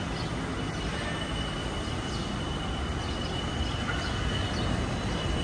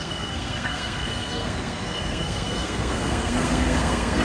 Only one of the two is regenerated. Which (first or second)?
second